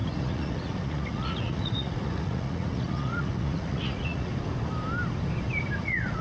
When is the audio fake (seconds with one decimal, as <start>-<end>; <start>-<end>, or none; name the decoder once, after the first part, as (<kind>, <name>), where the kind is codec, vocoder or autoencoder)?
0.0-4.3 (vocoder, Vocos); 5.8-6.2